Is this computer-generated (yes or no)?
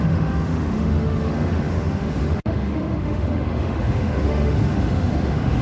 yes